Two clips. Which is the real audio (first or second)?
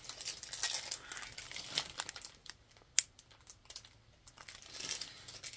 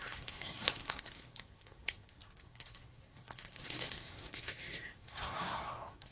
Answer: first